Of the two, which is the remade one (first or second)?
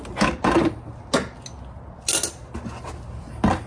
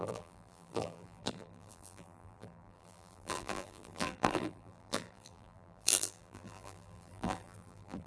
second